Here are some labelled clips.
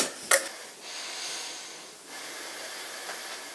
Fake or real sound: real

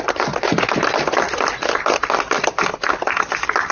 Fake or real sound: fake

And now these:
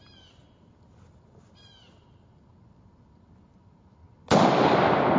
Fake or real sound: real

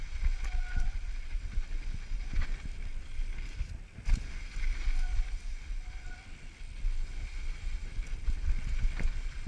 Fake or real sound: real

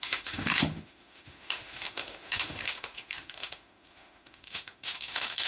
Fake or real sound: fake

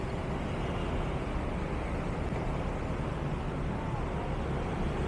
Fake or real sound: real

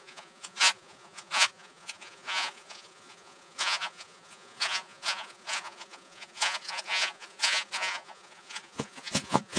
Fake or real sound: fake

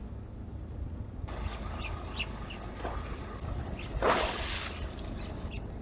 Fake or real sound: real